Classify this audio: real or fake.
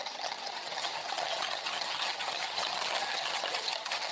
fake